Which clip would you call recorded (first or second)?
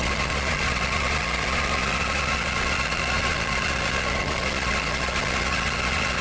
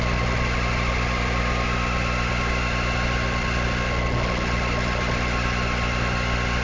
second